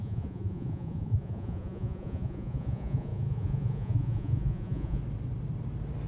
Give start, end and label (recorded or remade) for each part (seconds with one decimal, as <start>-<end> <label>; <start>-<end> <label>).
0.0-5.0 remade; 5.0-6.1 recorded